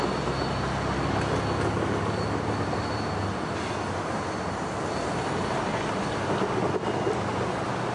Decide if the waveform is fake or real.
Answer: real